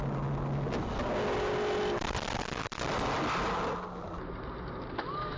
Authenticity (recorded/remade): recorded